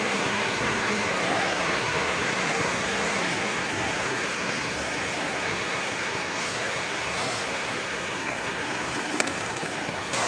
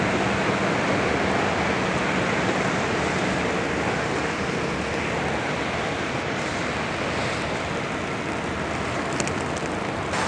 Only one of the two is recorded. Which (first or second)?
second